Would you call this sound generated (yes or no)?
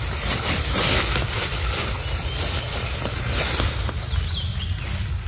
no